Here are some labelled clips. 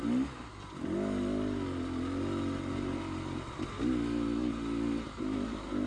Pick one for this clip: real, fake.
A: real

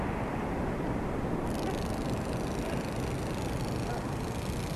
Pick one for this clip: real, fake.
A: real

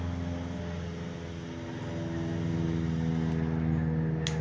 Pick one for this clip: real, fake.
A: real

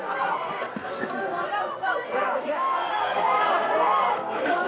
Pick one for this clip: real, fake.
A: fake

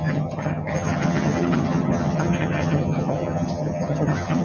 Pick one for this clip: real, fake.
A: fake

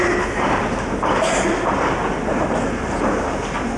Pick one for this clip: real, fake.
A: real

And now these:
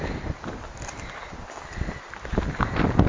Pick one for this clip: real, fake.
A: real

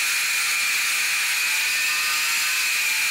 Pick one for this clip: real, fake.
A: real